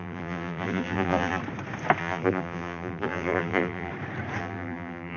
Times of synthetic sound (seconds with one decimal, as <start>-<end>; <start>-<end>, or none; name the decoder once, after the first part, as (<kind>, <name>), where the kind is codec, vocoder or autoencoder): 0.0-1.4 (vocoder, BigVGAN v2); 2.0-3.9; 4.4-5.2